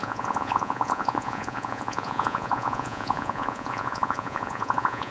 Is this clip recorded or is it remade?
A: remade